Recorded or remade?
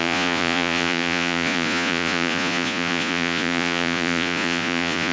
remade